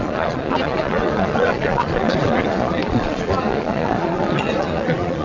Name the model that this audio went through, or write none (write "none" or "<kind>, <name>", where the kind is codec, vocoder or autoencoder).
vocoder, Vocos